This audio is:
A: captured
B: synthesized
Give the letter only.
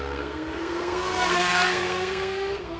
B